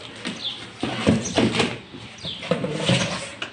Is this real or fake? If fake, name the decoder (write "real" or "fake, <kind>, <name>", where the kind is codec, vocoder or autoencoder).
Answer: real